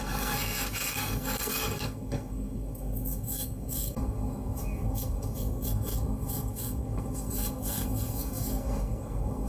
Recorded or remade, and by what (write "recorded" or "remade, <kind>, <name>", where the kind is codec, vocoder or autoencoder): remade, codec, SNAC